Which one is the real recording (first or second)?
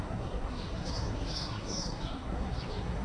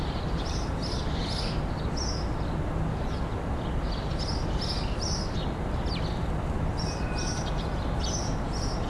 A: second